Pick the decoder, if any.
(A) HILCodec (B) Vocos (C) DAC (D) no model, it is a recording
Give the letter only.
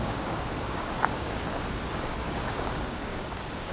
C